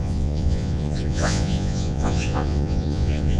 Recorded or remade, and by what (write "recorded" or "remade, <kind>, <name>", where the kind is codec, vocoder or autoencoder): remade, vocoder, Vocos